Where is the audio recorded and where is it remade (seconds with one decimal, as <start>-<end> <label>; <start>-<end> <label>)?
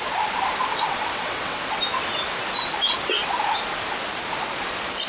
0.0-0.7 recorded; 0.7-1.7 remade; 1.7-5.1 recorded